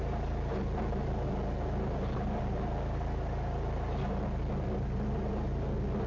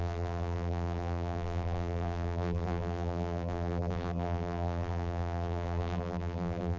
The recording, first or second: first